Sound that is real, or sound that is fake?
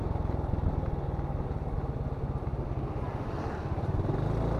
real